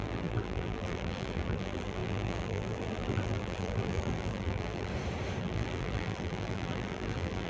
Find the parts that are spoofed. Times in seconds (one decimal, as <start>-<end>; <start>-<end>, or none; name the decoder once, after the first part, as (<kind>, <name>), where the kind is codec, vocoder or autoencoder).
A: 0.0-4.9 (vocoder, BigVGAN v2); 5.4-7.5